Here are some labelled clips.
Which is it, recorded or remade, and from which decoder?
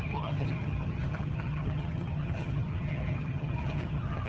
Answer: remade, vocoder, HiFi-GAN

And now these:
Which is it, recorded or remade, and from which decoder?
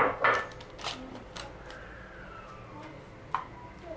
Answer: recorded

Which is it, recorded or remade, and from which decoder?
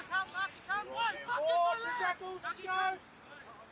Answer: recorded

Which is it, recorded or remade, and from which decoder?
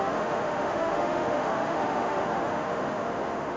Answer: remade, autoencoder, DAC-VAE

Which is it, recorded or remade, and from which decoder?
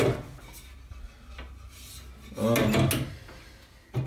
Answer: recorded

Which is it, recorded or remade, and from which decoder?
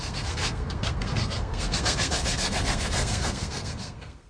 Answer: remade, codec, SNAC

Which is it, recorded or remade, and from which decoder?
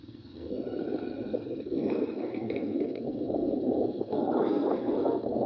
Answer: remade, codec, SNAC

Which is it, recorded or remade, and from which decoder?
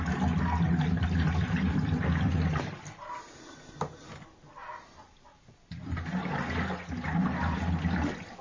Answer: recorded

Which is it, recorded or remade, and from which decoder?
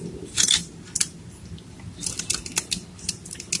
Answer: recorded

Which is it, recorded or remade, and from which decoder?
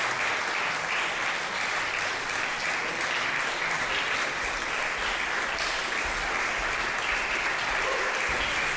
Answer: recorded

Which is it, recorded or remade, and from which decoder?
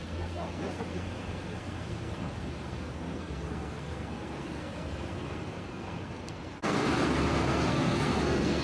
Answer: remade, codec, SNAC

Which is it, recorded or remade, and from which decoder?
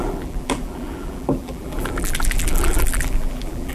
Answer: remade, vocoder, BigVGAN v2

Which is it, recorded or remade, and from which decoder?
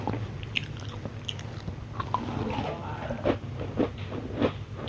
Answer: recorded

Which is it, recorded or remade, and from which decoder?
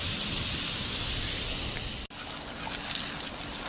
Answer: recorded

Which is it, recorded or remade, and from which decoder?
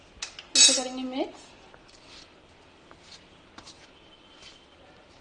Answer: recorded